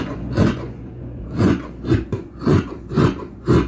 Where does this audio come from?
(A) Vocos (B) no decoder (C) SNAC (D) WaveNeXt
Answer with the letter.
A